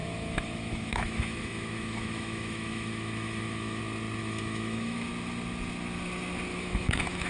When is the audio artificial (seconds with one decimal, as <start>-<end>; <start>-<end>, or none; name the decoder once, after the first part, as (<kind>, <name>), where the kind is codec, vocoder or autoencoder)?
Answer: 0.0-3.8 (autoencoder, DAC-VAE); 4.2-5.1; 6.5-7.3